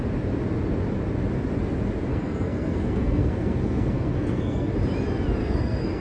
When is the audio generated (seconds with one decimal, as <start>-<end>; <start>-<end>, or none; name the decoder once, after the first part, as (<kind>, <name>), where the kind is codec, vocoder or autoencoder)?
2.1-4.7 (codec, SNAC); 5.4-6.0